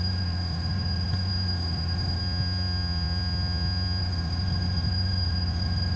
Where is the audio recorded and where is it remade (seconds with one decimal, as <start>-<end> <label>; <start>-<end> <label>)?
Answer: 0.0-2.2 remade; 2.2-4.0 recorded; 4.0-6.0 remade